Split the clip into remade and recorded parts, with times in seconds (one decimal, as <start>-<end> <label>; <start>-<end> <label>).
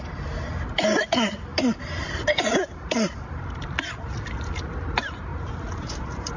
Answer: 0.0-6.4 recorded